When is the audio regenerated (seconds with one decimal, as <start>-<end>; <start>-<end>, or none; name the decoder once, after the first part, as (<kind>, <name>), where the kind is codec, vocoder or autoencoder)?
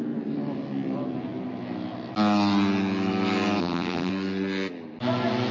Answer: 3.6-4.1 (vocoder, BigVGAN v2)